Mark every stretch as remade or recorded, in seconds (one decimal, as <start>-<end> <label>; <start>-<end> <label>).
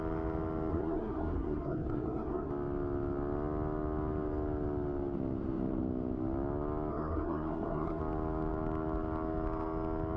0.0-0.7 recorded; 0.7-2.5 remade; 2.5-6.9 recorded; 6.9-8.0 remade; 8.0-10.2 recorded